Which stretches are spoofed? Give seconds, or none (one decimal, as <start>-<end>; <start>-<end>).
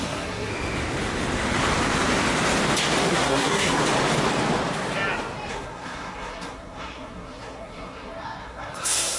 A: 0.0-0.5; 3.0-3.8; 5.5-9.2